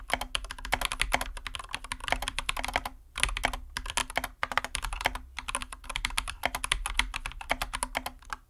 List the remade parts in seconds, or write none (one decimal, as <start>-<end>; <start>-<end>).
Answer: 2.0-3.2; 5.6-6.6